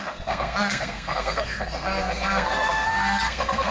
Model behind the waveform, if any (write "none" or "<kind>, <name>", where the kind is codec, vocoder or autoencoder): codec, SNAC